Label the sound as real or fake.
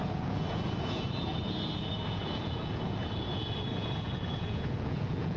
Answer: fake